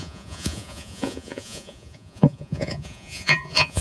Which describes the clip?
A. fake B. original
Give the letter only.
A